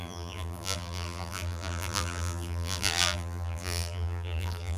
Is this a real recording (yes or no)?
no